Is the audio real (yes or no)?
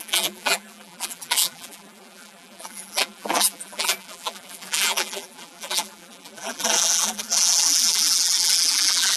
no